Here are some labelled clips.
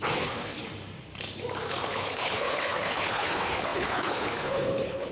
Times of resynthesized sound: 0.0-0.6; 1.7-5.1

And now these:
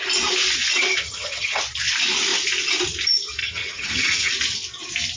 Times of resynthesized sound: 0.9-1.6; 3.4-4.3

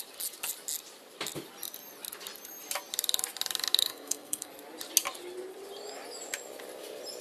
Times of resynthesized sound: 3.8-4.5

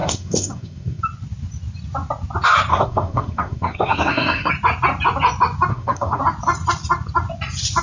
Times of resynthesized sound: 0.0-1.0; 2.7-4.5; 5.7-6.2